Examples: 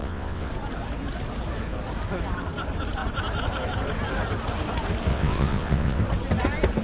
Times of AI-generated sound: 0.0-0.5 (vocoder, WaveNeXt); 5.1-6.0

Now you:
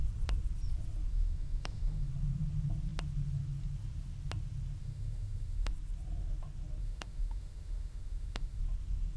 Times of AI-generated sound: 1.1-2.1 (autoencoder, DAC-VAE); 4.8-5.7; 6.8-8.6

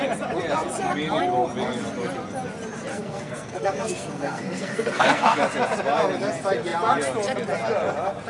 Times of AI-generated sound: 2.9-5.4 (codec, SNAC)

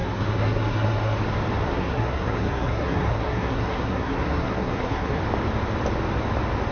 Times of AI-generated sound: 0.0-1.2 (codec, SNAC); 1.6-5.2

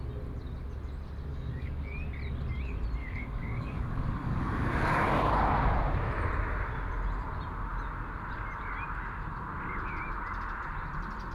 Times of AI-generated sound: 1.3-1.8 (codec, DAC); 3.0-5.3

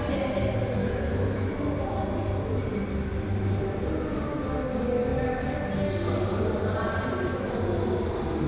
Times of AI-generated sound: 0.8-1.5 (autoencoder, DAC-VAE)

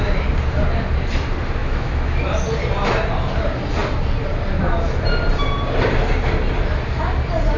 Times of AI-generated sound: 1.6-2.2 (autoencoder, DAC-VAE)